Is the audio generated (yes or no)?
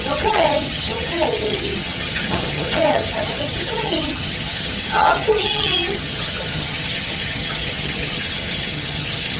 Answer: yes